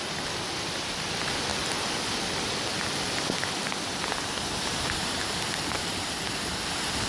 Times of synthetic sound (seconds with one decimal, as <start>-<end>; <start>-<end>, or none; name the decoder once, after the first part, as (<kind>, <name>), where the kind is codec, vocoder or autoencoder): none